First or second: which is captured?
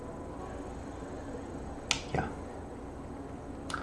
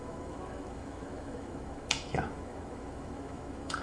first